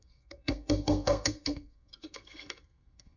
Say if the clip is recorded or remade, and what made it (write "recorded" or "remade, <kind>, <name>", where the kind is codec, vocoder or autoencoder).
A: remade, codec, SNAC